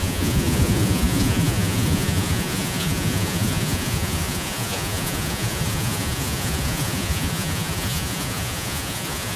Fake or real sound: fake